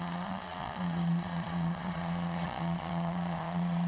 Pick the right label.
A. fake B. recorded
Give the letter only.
A